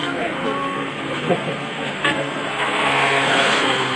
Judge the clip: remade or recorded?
remade